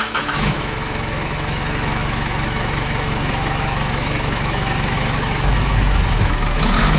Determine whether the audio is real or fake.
fake